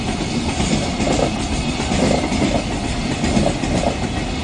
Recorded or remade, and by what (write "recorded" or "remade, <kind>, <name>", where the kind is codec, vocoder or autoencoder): recorded